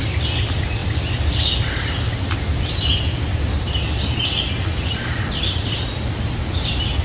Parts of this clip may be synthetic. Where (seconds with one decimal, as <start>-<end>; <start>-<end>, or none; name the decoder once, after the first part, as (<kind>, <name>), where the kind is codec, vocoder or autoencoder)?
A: none